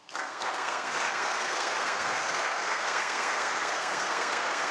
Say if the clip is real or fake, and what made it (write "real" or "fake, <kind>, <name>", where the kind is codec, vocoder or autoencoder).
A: fake, codec, SNAC